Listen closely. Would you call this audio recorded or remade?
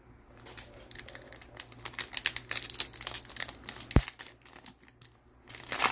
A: recorded